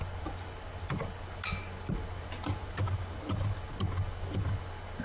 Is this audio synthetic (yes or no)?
no